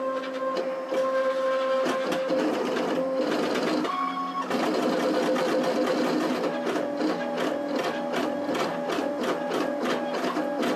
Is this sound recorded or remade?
recorded